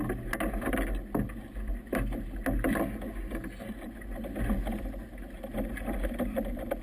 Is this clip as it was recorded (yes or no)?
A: yes